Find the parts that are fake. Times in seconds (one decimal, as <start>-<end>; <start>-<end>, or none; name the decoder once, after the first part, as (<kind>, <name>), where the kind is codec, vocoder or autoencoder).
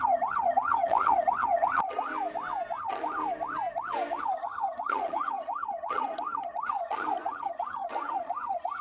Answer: 0.0-2.1 (vocoder, HiFi-GAN); 2.8-3.2; 4.2-8.8